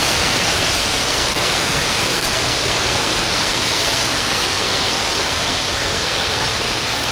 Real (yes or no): no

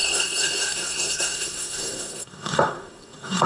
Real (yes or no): no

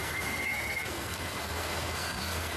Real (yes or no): no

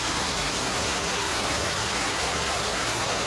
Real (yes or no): no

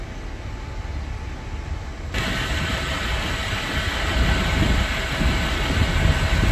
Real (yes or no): yes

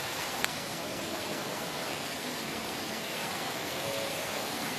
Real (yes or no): no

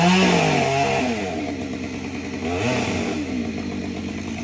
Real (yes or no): yes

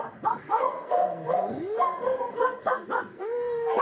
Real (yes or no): no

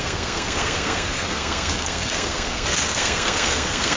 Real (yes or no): no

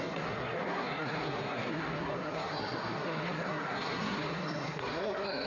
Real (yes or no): no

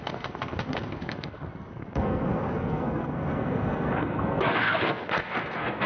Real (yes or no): no